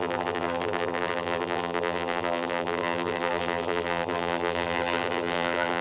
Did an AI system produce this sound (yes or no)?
yes